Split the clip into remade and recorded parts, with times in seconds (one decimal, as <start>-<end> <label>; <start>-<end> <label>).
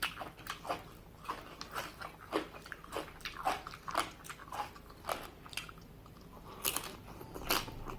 0.0-8.0 recorded